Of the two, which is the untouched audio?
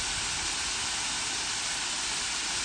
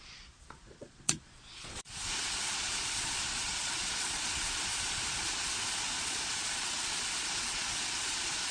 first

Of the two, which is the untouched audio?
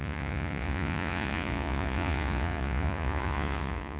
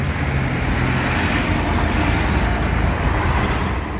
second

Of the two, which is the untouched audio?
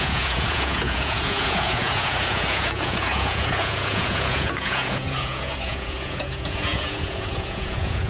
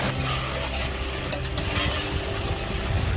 second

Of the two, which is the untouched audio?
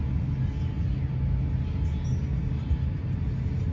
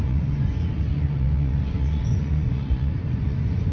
first